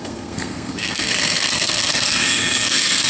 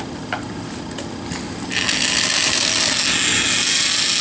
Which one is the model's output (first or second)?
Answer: first